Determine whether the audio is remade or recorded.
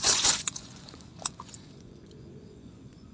remade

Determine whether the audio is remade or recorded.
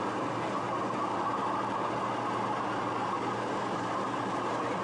recorded